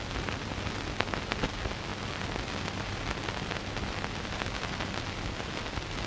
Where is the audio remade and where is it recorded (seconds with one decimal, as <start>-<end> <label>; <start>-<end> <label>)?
0.0-6.1 recorded